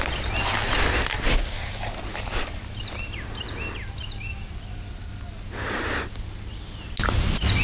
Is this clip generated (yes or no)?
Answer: no